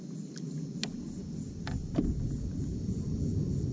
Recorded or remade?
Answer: recorded